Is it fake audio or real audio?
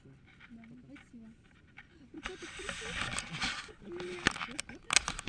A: real